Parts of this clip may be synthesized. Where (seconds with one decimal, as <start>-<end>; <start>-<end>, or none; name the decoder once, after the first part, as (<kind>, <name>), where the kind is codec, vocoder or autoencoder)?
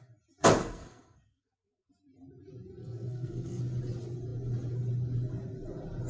0.6-1.9 (codec, SNAC); 2.8-3.6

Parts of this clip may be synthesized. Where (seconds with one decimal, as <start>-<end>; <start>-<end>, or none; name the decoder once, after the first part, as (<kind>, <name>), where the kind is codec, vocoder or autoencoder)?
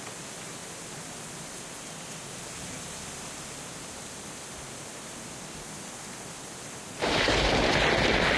none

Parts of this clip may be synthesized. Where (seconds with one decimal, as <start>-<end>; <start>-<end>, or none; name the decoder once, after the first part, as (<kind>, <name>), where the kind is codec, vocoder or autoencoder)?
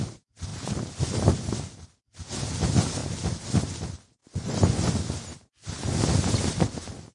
4.2-4.9 (vocoder, Vocos)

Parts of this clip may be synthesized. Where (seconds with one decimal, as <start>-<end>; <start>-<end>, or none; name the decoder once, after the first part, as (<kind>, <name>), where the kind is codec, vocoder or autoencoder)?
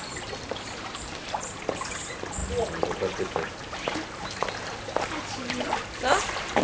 none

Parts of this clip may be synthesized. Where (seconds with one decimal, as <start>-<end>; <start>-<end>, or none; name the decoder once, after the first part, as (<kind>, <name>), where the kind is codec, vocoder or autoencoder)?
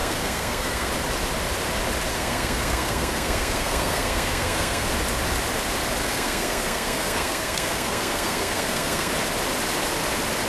0.0-0.9 (codec, SNAC); 2.1-4.9; 6.0-9.1